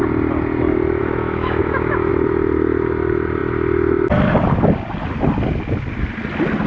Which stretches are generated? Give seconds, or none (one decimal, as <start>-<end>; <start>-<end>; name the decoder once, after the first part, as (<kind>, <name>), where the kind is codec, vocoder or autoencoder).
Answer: 1.0-2.1 (autoencoder, DAC-VAE)